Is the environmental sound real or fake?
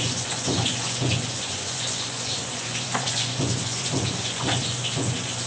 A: fake